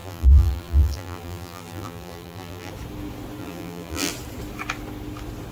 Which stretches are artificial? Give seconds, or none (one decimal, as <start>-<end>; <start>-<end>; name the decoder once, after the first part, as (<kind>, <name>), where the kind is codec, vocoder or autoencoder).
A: 0.0-2.7 (vocoder, BigVGAN v2); 3.4-4.1